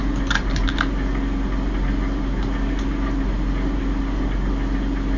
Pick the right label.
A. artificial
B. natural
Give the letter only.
B